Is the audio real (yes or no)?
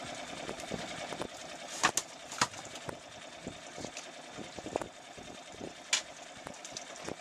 yes